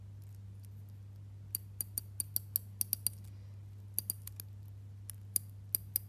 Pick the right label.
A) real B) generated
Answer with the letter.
A